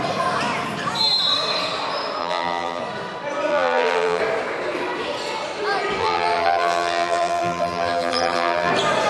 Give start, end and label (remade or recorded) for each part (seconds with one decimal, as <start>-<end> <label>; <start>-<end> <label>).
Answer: 0.0-2.2 recorded; 2.2-2.8 remade; 2.8-3.5 recorded; 3.5-4.2 remade; 4.2-6.0 recorded; 6.0-8.7 remade; 8.7-9.1 recorded